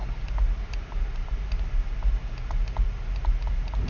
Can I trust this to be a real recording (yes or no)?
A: yes